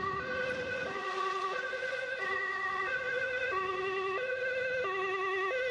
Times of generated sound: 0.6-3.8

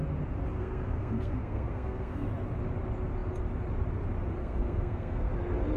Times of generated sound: 0.6-2.3; 4.4-5.3

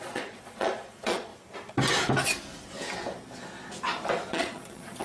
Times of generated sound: 0.0-1.3; 4.3-5.0